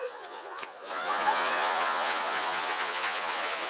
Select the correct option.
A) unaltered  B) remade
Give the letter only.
B